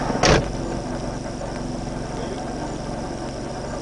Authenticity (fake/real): real